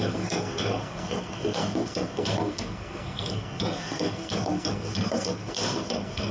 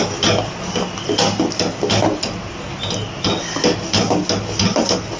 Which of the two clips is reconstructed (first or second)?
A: first